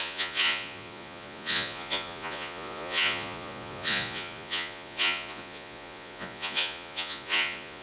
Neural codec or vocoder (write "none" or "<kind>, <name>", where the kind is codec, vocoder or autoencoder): vocoder, Vocos